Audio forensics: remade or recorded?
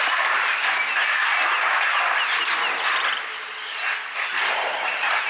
recorded